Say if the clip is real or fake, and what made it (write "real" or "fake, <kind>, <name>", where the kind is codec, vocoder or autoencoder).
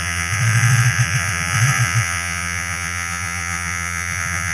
fake, vocoder, Vocos